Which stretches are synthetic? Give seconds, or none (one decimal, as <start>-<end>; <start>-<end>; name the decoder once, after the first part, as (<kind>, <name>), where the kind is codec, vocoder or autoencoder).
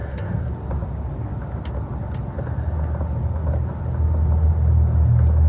0.0-0.5 (codec, SNAC)